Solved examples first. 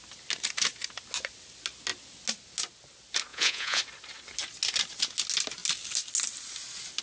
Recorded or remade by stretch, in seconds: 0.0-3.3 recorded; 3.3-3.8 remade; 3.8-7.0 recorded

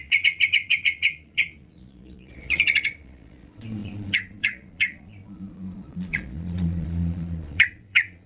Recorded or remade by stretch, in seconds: 0.0-8.3 remade